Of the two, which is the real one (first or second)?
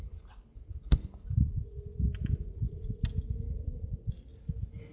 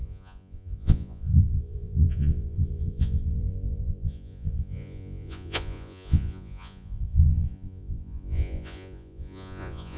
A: first